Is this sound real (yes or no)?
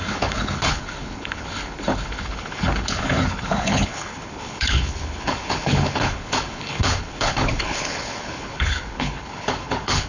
no